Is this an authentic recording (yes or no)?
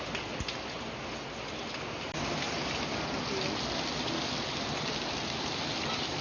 yes